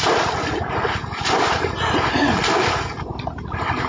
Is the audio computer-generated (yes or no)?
no